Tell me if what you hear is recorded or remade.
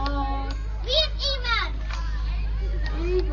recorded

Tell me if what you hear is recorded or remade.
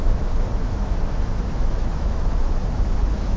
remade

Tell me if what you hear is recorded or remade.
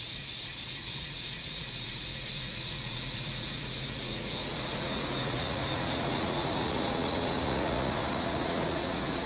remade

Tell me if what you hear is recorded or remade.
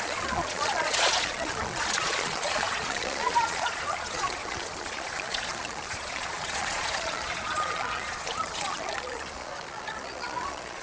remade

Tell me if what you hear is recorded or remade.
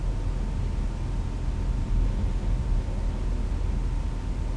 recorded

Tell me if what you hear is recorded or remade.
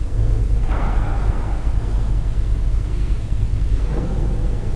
remade